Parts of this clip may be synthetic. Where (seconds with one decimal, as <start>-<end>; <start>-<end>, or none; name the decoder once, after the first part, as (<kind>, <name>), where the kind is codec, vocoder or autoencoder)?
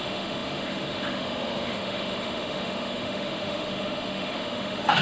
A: 0.0-5.0 (autoencoder, DAC-VAE)